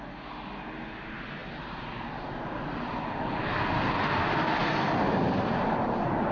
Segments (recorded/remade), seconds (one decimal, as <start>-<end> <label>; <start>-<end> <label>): 0.0-6.3 recorded